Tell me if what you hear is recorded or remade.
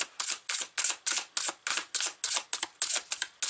recorded